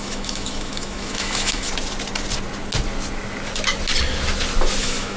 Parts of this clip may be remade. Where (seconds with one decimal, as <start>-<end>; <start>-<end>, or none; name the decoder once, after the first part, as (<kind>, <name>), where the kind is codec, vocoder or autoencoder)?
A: 0.0-1.7 (autoencoder, DAC-VAE); 4.8-5.2

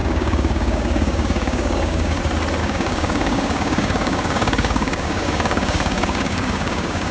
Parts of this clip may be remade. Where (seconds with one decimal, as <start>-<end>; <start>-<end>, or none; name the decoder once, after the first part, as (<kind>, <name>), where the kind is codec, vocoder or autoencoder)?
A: 0.0-2.2 (codec, DAC); 2.6-7.1

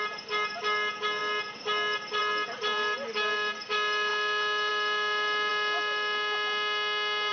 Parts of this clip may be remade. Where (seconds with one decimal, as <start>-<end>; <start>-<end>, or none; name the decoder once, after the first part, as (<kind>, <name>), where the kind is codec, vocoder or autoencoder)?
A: none